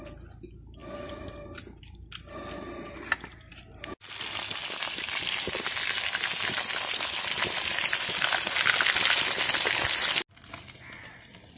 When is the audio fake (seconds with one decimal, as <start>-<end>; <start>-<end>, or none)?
none